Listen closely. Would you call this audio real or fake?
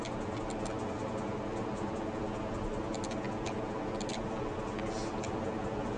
real